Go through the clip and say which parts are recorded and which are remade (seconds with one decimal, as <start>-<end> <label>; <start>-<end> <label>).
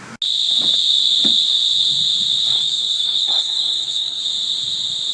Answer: 0.0-2.5 recorded; 2.5-4.2 remade; 4.2-5.1 recorded